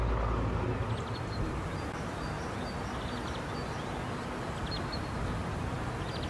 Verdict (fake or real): real